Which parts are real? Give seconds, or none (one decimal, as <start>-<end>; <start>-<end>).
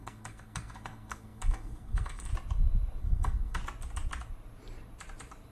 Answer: 2.3-3.0; 3.6-5.5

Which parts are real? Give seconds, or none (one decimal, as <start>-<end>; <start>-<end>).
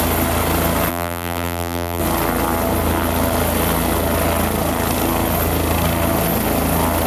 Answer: 0.0-0.9; 2.0-7.1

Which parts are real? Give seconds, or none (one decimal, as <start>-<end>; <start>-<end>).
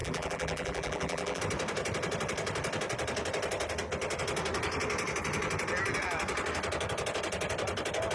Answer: 1.4-8.1